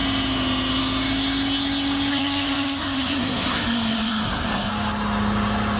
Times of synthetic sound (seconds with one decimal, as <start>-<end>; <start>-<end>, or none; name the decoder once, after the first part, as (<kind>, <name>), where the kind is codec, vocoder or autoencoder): 2.1-4.7 (codec, SNAC)